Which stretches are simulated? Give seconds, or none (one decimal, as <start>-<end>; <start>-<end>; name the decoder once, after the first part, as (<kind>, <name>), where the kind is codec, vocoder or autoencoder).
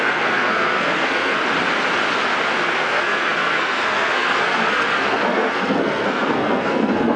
0.0-1.4 (codec, SNAC); 2.6-7.2